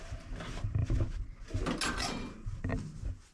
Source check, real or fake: real